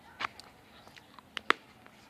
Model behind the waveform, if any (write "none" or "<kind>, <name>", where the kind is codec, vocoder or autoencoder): none